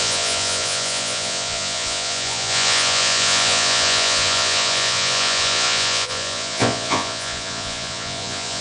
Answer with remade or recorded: remade